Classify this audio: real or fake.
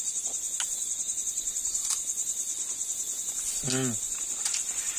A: real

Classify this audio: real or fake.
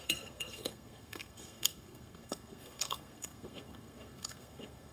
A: fake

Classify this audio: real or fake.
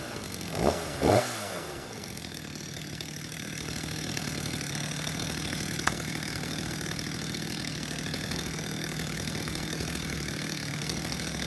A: fake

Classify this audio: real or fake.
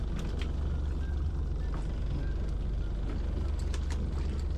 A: real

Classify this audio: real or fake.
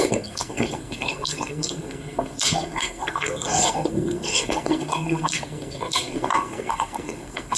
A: fake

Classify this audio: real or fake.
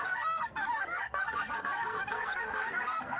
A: fake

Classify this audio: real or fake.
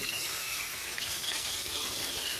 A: fake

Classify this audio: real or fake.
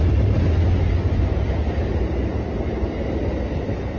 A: real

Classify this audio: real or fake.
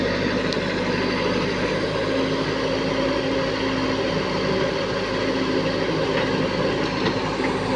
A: real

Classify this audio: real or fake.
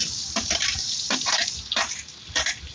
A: real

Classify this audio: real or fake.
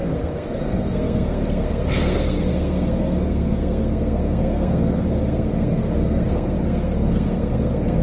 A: fake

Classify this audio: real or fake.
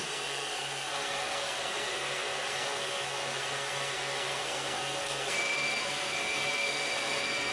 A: fake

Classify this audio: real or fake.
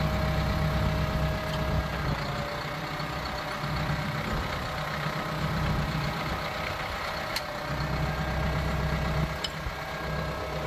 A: real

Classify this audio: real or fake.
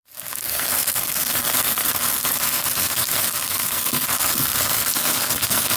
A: fake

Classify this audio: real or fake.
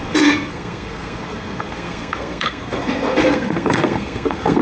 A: fake